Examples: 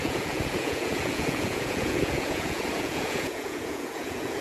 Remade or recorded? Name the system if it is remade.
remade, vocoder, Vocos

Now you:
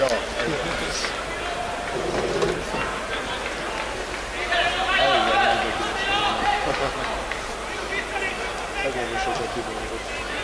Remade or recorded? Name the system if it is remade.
recorded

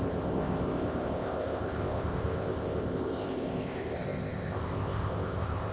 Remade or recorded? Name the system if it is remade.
remade, codec, ZipCodec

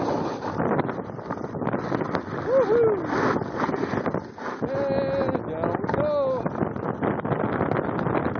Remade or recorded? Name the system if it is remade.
recorded